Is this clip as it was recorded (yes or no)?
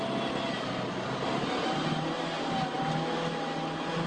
yes